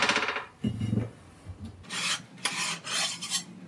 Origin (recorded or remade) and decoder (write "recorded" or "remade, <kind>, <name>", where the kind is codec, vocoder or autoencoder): recorded